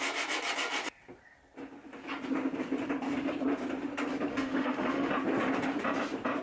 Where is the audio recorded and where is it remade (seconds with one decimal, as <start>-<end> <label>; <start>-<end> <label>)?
0.0-4.3 recorded; 4.3-5.1 remade; 5.1-6.4 recorded